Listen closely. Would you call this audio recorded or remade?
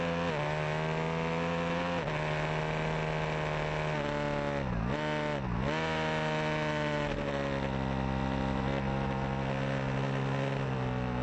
recorded